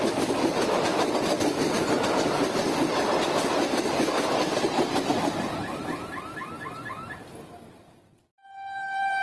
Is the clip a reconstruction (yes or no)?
no